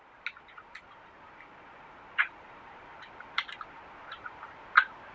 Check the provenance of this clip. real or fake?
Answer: real